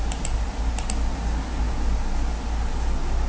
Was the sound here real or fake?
real